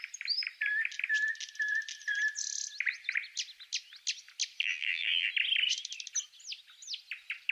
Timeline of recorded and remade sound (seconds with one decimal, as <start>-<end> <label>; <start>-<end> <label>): 0.0-4.6 recorded; 4.6-5.3 remade; 5.3-7.5 recorded